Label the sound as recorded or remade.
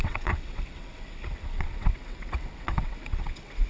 remade